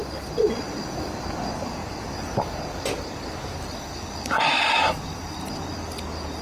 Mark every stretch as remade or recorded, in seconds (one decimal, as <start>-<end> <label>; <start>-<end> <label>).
0.0-6.4 recorded